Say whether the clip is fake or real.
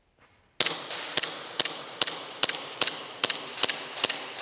real